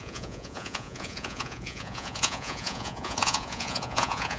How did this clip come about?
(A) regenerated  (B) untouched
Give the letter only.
A